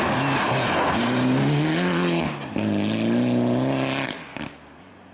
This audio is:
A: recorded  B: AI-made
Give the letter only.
A